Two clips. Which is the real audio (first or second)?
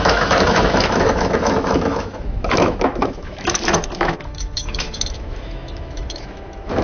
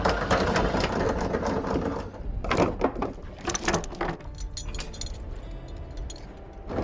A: second